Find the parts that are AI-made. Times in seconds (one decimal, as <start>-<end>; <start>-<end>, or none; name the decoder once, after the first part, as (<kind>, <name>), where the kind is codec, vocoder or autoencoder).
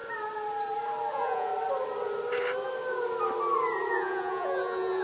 1.1-1.5 (vocoder, Vocos); 3.9-5.0